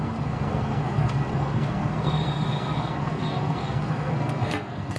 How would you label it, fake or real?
fake